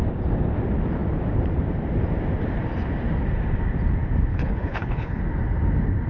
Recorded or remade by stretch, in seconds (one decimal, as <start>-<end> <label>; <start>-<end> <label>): 0.0-4.3 recorded; 4.3-5.2 remade; 5.2-6.1 recorded